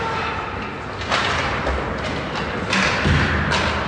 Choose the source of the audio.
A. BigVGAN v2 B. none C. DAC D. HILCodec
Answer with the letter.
B